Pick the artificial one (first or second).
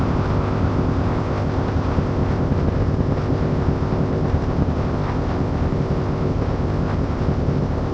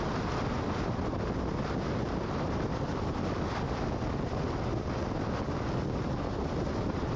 first